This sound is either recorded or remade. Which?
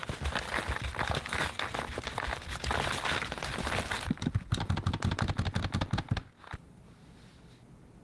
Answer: recorded